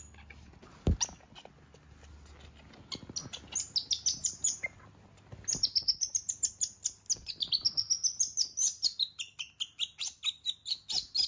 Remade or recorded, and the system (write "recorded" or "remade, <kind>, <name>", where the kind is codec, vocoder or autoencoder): recorded